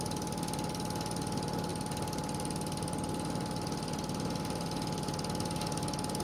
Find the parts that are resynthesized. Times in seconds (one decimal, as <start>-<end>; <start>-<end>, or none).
none

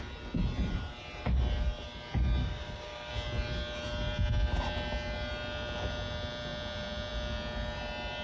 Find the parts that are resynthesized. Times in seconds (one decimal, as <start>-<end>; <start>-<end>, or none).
2.4-3.1

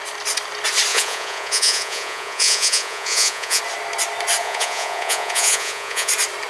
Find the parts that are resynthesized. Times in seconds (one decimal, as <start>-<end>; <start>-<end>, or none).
0.9-3.6; 4.4-6.1